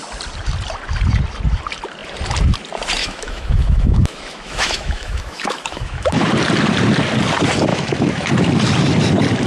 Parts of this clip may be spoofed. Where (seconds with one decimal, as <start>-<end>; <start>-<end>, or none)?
3.0-6.3; 7.7-8.3